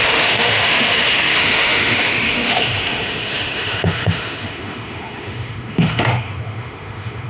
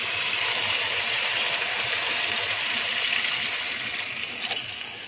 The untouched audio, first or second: second